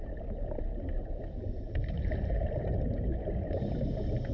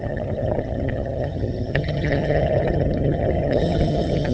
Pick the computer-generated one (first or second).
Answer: second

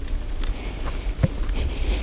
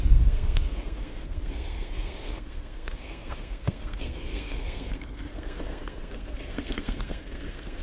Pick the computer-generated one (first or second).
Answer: second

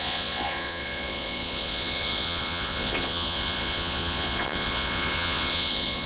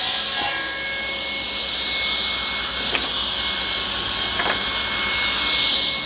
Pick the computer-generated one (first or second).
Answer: first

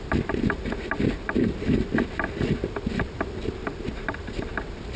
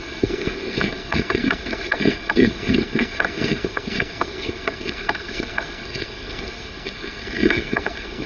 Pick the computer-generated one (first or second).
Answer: second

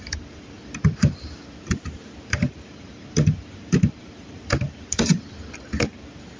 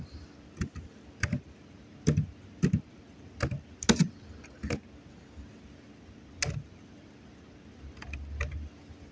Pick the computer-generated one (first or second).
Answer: first